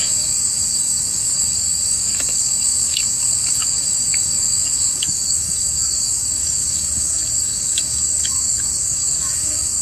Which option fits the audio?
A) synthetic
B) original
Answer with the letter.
A